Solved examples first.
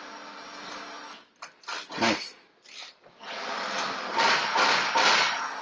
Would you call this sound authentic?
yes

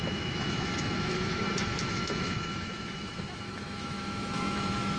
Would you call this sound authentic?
no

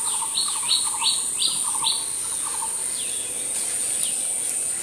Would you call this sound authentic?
yes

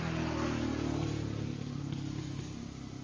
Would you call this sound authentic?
yes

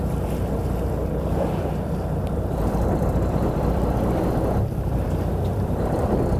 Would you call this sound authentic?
no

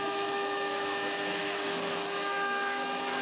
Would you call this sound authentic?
no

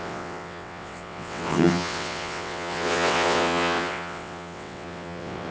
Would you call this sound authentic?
no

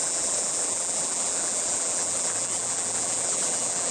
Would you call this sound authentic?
no